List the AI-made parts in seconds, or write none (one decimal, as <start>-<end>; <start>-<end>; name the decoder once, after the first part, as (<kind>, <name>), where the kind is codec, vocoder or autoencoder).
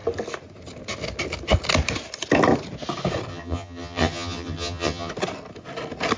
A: 3.3-5.1 (vocoder, HiFi-GAN)